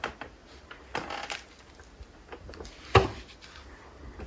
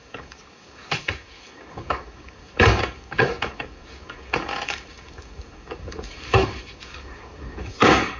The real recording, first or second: first